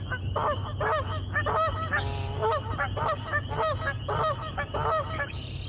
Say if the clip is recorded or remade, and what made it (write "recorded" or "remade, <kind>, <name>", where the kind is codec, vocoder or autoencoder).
recorded